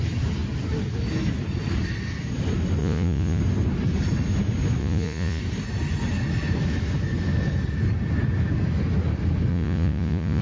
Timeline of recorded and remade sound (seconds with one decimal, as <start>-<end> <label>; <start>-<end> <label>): 0.0-2.8 recorded; 2.8-3.4 remade; 3.4-4.8 recorded; 4.8-5.4 remade; 5.4-9.5 recorded; 9.5-10.4 remade